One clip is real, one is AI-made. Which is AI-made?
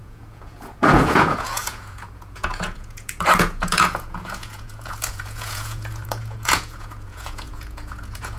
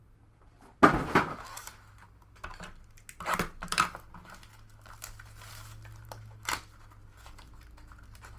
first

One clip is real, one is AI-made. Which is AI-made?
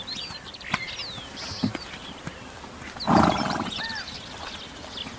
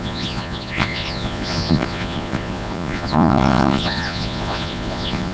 second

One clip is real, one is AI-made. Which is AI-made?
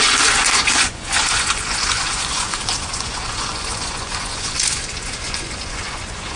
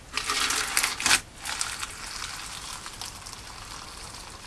first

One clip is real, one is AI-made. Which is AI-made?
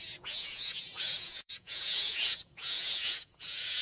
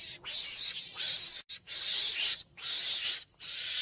first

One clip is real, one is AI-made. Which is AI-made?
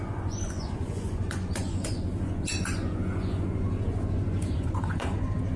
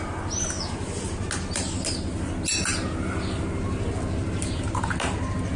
first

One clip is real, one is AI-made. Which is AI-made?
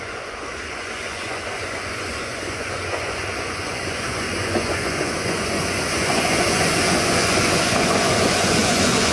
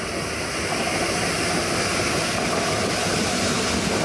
first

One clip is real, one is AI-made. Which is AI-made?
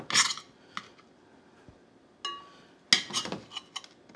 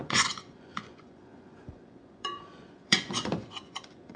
second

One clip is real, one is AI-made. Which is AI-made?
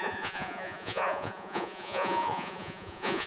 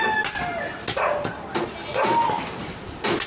first